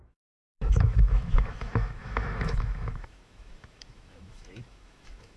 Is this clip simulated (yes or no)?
yes